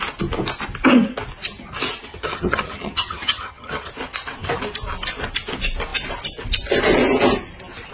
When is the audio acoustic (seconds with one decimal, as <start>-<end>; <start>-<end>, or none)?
0.0-2.1; 3.9-7.9